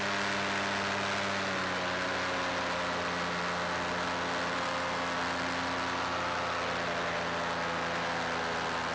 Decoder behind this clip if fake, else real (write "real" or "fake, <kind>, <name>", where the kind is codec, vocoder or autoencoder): real